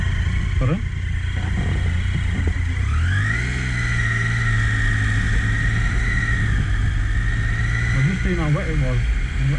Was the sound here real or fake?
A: real